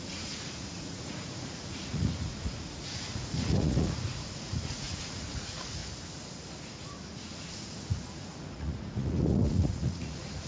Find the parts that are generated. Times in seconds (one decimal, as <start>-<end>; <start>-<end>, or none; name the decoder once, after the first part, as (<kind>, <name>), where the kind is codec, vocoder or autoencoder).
0.0-5.8 (vocoder, Vocos); 7.1-10.5